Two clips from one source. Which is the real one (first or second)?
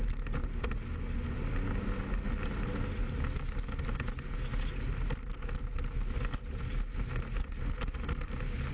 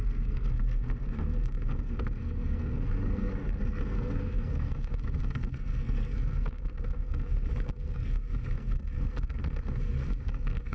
first